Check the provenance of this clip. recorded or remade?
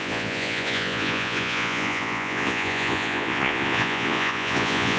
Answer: remade